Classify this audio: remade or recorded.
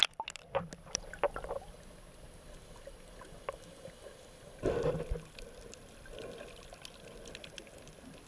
recorded